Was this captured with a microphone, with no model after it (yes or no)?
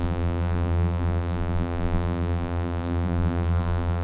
no